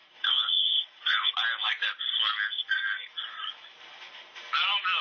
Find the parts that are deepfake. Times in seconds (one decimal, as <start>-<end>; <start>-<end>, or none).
0.0-1.3